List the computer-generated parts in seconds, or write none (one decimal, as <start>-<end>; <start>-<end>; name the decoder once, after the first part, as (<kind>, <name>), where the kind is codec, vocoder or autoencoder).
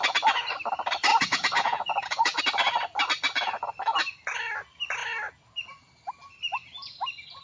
1.1-2.4 (vocoder, Vocos)